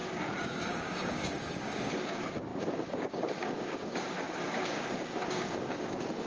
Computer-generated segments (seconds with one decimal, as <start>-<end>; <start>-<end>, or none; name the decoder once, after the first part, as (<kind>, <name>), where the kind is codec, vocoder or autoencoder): 0.0-6.3 (codec, DAC)

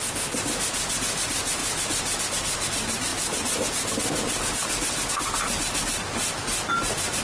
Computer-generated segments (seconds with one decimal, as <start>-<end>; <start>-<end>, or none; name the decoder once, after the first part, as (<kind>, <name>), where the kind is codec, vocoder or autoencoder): none

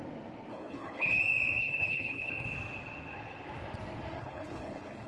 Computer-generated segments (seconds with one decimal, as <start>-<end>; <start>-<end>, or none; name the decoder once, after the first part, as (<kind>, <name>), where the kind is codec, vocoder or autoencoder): 0.5-1.2 (codec, HILCodec); 1.6-2.3; 4.2-5.1

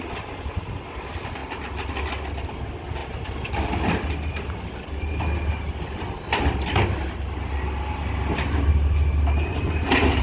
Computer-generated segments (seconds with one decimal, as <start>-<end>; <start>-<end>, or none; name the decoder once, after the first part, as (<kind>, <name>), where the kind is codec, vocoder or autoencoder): none

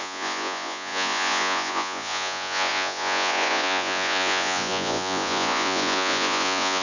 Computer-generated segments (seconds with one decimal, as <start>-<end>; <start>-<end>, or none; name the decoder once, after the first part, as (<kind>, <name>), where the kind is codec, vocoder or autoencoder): 0.0-6.8 (vocoder, Vocos)

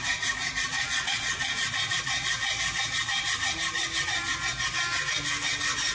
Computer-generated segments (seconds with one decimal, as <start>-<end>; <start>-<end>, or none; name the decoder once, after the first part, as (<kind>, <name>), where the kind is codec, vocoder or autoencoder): 0.7-1.5 (vocoder, Vocos)

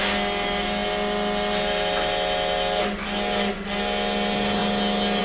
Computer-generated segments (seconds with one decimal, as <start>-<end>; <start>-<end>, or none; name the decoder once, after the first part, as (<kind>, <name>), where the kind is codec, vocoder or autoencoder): none